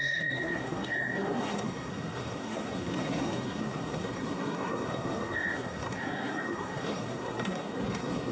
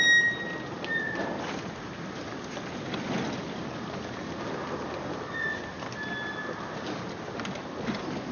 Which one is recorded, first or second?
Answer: second